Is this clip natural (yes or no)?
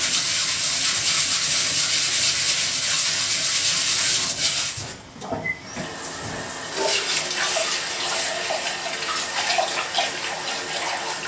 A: yes